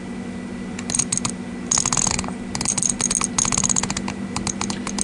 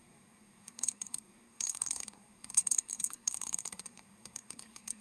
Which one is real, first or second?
first